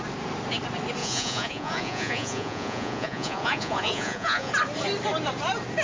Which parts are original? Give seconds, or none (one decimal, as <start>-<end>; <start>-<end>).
0.0-1.0; 4.5-5.8